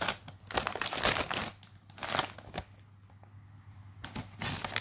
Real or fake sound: real